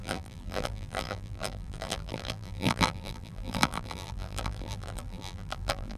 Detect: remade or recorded remade